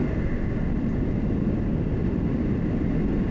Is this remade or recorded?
recorded